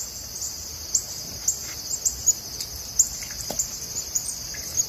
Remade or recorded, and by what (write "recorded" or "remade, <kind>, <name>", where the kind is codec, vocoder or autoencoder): recorded